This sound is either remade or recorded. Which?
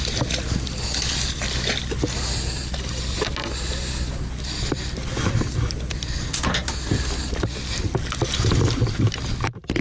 recorded